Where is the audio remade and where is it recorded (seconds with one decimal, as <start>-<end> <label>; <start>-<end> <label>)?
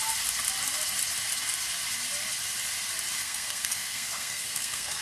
0.0-3.2 recorded; 3.2-5.0 remade